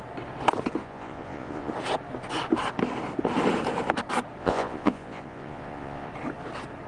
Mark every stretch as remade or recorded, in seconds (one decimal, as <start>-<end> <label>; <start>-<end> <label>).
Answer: 0.0-0.8 recorded; 0.8-1.7 remade; 1.7-4.4 recorded; 4.4-6.1 remade; 6.1-6.9 recorded